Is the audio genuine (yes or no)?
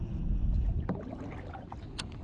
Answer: yes